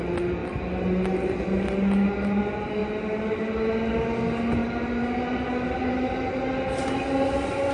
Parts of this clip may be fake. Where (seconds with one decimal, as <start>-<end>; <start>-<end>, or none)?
none